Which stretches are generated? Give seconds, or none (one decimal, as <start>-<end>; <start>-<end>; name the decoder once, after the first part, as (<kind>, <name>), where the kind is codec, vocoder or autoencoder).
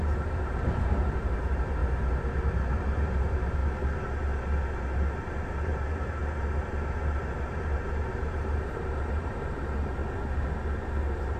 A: 0.0-1.8 (vocoder, BigVGAN v2); 2.8-3.6; 4.8-10.0; 11.0-11.4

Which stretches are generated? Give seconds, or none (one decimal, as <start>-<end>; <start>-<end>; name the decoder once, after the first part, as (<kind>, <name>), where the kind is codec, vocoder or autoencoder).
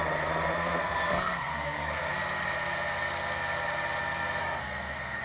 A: 0.8-2.1 (codec, SNAC); 4.4-5.2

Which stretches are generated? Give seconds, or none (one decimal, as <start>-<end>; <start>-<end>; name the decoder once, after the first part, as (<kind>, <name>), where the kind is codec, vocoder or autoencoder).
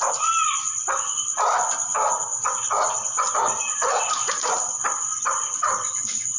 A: none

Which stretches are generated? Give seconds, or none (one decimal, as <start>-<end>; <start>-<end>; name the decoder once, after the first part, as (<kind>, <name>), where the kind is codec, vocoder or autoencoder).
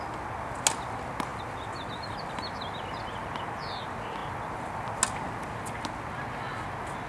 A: none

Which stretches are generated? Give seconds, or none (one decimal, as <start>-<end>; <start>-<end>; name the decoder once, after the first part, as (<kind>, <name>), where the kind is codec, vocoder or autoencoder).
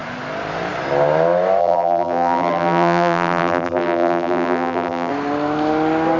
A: 1.6-5.1 (vocoder, BigVGAN v2)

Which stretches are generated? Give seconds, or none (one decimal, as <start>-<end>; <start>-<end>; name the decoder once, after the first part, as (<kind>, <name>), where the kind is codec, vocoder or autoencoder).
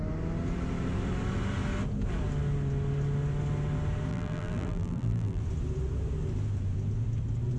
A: 4.1-5.4 (vocoder, BigVGAN v2)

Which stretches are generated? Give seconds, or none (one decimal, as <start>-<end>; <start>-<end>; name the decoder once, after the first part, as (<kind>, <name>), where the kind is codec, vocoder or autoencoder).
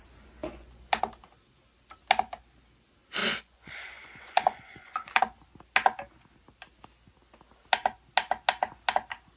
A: 0.4-1.0 (vocoder, Vocos); 3.2-5.2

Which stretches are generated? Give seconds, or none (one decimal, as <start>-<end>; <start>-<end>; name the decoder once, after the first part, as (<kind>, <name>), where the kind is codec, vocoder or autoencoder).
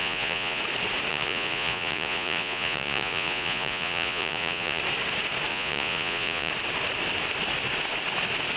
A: 0.0-0.6 (vocoder, Vocos); 1.1-4.8; 5.5-6.5